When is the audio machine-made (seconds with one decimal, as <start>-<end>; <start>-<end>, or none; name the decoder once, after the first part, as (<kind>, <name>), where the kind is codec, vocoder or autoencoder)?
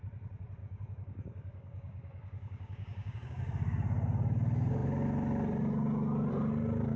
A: 0.6-3.4 (codec, DAC)